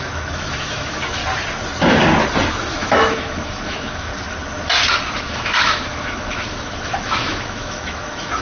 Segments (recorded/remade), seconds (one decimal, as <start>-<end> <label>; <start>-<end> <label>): 0.0-1.2 remade; 1.2-2.5 recorded; 2.5-4.1 remade; 4.1-5.2 recorded; 5.2-8.4 remade